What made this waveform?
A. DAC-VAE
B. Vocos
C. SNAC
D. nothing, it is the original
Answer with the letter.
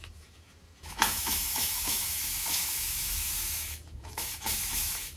A